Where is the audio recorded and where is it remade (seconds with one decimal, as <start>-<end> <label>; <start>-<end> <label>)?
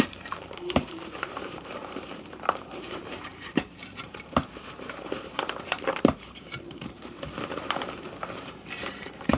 0.0-9.4 remade